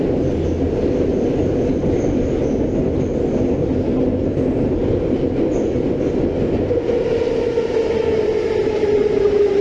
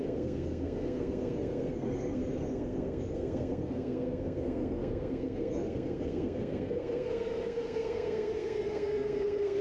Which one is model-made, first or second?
second